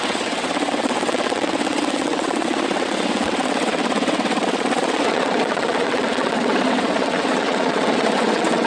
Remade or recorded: remade